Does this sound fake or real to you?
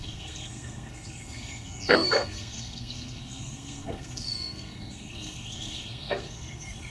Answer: fake